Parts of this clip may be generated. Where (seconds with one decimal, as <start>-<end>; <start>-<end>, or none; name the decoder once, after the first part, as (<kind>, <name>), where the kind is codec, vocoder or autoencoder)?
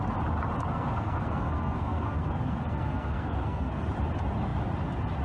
0.7-3.8 (codec, SNAC)